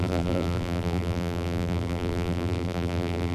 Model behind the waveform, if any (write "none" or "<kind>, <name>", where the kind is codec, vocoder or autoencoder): vocoder, BigVGAN v2